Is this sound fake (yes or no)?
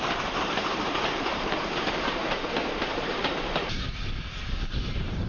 yes